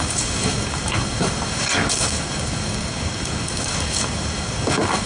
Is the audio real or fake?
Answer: fake